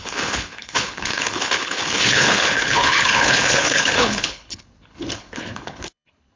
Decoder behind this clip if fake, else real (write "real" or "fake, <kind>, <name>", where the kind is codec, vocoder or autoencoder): fake, codec, HILCodec